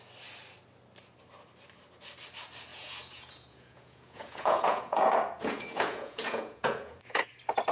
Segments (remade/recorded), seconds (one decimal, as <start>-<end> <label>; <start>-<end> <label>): 0.0-2.7 recorded; 2.7-7.3 remade; 7.3-7.7 recorded